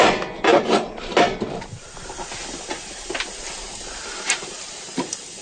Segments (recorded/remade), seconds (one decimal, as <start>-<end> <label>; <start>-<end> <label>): 0.0-5.4 recorded